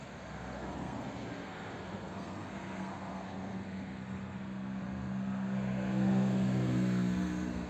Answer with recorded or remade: remade